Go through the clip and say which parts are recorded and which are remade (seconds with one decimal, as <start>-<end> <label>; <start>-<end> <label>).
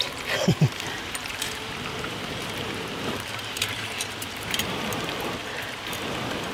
0.0-1.3 recorded; 1.3-5.2 remade; 5.2-6.5 recorded